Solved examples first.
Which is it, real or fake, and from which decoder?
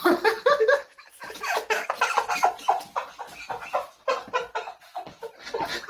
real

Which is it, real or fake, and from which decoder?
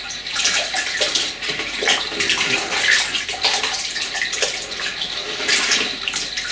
fake, vocoder, BigVGAN v2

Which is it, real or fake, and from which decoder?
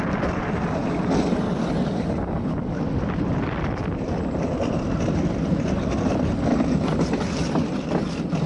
fake, vocoder, BigVGAN v2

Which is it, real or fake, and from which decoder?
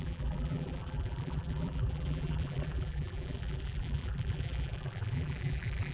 fake, vocoder, BigVGAN v2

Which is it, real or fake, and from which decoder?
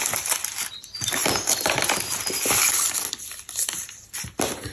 real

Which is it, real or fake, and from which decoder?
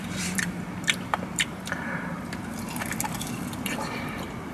fake, vocoder, BigVGAN v2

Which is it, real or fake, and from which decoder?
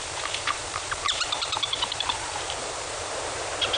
fake, vocoder, BigVGAN v2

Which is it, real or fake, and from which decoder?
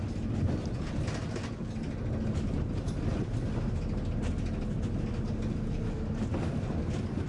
real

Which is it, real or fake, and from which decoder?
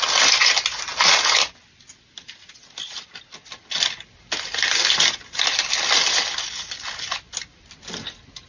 real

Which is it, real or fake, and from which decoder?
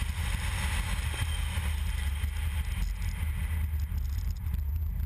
real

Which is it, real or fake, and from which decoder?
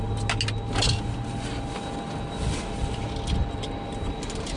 real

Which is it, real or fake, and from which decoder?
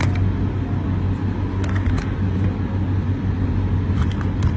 real